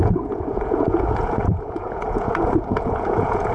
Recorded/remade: remade